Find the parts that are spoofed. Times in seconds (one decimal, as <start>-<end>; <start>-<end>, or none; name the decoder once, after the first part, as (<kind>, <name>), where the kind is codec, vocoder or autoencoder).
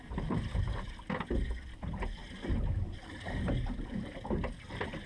none